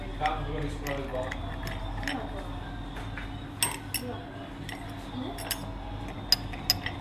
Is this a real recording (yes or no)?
yes